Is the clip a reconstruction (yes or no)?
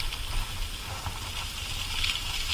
no